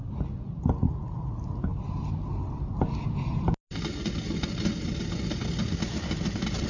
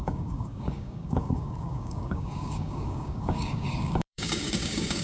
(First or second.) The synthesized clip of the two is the second